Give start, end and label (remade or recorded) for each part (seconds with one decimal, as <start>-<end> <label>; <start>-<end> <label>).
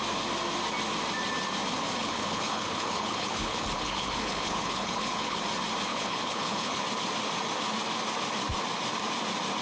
0.0-2.0 recorded; 2.0-5.4 remade; 5.4-5.9 recorded; 5.9-6.8 remade; 6.8-9.6 recorded